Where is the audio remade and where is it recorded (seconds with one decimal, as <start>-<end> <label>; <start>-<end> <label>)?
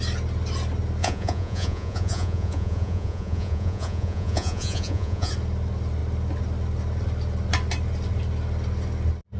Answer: 0.0-1.0 recorded; 1.0-5.3 remade; 5.3-9.4 recorded